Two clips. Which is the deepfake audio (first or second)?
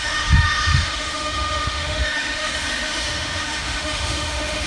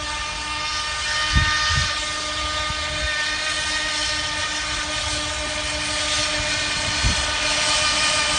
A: first